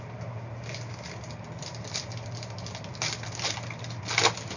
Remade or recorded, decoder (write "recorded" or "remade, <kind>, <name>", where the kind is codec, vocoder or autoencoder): recorded